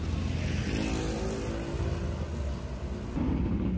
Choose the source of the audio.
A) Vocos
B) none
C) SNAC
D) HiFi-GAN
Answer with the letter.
B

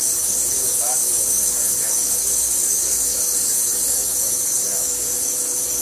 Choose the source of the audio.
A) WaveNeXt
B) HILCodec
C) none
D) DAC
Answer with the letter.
D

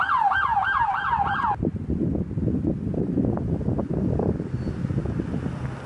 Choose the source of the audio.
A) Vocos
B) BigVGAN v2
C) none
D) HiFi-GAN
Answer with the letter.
C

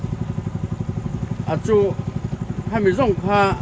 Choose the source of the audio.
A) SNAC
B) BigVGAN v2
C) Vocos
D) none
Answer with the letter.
D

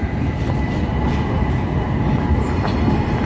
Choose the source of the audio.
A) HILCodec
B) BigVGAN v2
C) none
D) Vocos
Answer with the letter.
C